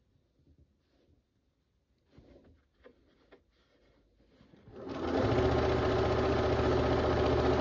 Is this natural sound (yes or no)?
yes